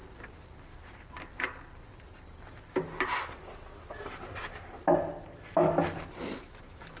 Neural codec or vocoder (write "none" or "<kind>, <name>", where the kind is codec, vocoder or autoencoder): none